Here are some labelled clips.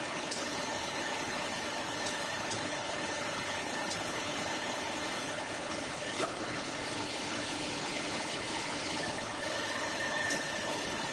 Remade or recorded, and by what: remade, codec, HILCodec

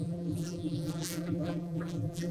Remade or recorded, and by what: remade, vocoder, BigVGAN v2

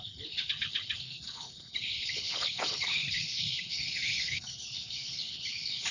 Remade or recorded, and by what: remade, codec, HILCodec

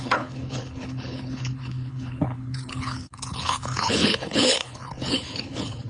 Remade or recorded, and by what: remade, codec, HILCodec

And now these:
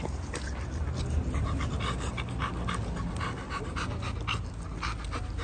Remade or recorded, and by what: recorded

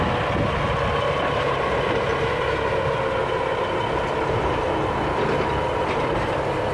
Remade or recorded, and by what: recorded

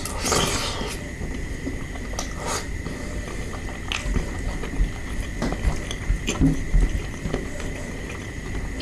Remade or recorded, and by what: recorded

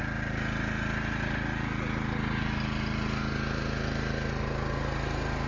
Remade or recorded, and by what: recorded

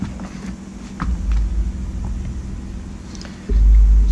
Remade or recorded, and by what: recorded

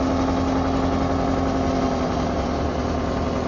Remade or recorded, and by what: recorded